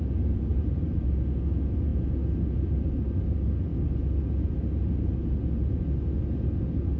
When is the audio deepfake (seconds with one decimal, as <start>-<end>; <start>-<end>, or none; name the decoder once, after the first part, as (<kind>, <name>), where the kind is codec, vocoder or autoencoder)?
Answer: 0.5-1.0 (vocoder, BigVGAN v2)